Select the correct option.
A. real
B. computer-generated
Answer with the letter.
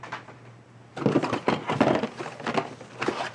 A